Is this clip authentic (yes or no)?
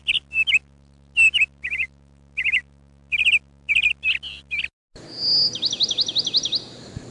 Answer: yes